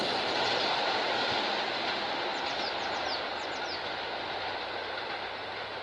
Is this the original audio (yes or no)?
yes